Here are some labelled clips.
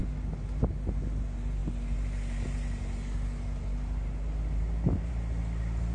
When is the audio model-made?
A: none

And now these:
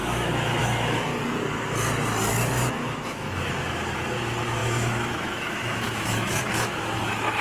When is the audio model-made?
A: 0.0-1.1 (autoencoder, DAC-VAE); 2.7-7.4

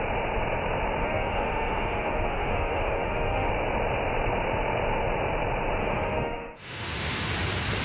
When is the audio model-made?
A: 1.0-3.5 (autoencoder, DAC-VAE); 5.8-7.3

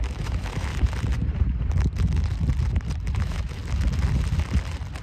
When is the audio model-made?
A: 0.0-0.7 (autoencoder, DAC-VAE); 3.2-3.6

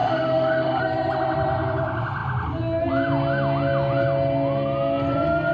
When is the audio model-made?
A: 0.0-0.8 (autoencoder, DAC-VAE)

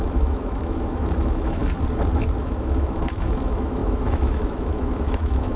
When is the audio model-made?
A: 0.0-1.6 (autoencoder, DAC-VAE); 2.4-5.6

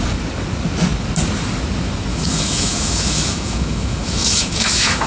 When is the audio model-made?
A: 2.1-5.1 (autoencoder, DAC-VAE)

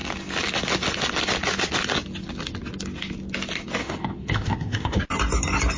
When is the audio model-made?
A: 3.8-5.0 (autoencoder, DAC-VAE)